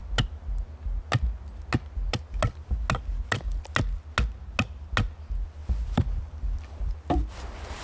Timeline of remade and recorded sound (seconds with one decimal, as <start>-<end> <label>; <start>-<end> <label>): 0.0-5.6 recorded; 5.6-6.9 remade; 6.9-7.8 recorded